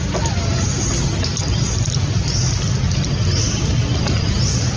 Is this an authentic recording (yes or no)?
yes